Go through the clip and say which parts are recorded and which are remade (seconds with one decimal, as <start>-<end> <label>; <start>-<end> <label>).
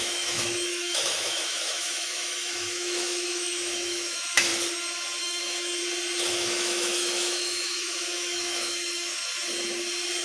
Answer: 0.0-4.5 remade; 4.5-5.2 recorded; 5.2-5.8 remade; 5.8-6.3 recorded; 6.3-9.2 remade; 9.2-10.2 recorded